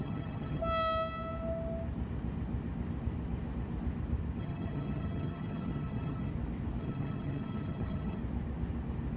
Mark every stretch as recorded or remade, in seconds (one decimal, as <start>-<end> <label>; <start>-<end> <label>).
0.0-0.6 remade; 0.6-4.4 recorded; 4.4-6.3 remade; 6.3-6.8 recorded; 6.8-8.2 remade; 8.2-9.2 recorded

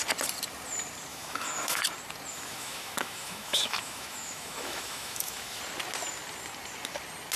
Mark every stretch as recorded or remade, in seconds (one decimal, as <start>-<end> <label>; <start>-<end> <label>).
0.0-1.1 recorded; 1.1-1.8 remade; 1.8-2.3 recorded; 2.3-5.6 remade; 5.6-7.4 recorded

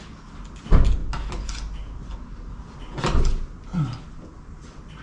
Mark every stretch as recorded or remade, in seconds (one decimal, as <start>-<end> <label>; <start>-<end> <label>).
0.0-5.0 recorded

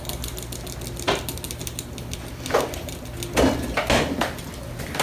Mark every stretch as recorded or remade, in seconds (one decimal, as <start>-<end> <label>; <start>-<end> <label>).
0.0-5.0 recorded